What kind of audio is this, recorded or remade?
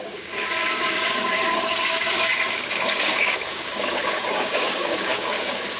remade